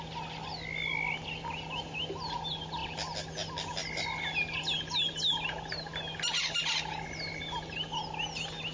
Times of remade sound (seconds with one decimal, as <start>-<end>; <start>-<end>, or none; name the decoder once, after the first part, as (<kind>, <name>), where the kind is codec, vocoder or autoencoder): none